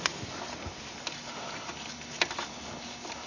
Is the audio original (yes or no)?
no